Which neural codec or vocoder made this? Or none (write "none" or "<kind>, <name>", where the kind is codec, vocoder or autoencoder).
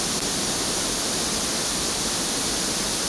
none